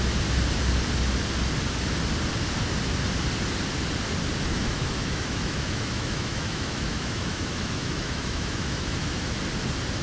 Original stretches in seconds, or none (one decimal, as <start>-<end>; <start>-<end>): 0.0-4.5; 9.4-10.0